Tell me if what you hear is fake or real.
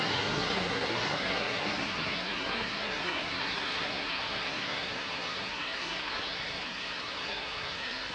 fake